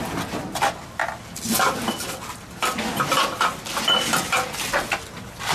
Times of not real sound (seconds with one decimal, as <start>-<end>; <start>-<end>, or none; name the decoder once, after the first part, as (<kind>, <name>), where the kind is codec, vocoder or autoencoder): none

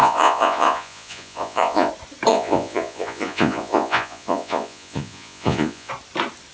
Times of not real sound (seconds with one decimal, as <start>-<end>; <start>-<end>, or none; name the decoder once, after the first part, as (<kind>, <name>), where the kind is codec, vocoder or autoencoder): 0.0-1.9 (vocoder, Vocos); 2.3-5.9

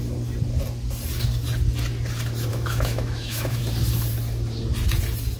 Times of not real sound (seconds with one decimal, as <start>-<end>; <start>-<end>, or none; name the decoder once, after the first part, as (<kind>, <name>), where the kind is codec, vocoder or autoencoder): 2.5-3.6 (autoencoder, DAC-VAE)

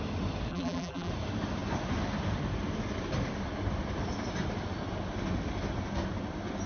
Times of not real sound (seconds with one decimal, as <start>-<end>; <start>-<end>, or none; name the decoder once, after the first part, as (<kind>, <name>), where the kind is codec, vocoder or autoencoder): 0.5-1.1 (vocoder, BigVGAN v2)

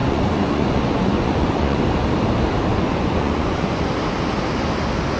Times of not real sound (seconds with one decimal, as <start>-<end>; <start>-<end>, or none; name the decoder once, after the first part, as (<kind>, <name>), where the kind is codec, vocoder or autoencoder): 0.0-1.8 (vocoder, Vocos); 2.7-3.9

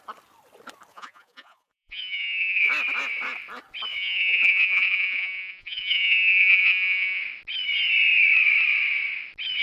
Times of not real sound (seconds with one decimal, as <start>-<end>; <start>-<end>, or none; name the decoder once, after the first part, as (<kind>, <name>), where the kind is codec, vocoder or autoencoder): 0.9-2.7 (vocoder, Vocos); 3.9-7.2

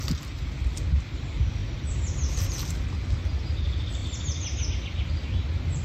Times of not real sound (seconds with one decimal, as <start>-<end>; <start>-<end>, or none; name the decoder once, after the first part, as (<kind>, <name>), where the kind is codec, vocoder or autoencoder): none

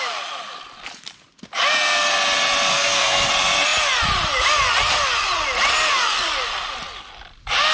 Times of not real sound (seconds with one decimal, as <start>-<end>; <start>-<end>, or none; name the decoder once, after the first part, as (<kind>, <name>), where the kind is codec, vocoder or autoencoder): 2.7-3.3 (codec, SNAC)